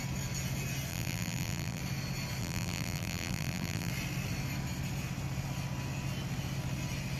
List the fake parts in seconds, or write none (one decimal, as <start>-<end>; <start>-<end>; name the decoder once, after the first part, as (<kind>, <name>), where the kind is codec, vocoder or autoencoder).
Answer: 0.9-1.8 (vocoder, BigVGAN v2); 2.4-3.9